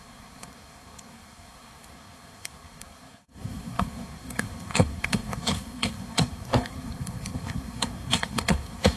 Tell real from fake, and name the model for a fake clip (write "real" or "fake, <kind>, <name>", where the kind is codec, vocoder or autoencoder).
fake, codec, SNAC